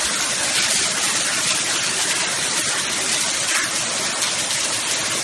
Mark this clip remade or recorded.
recorded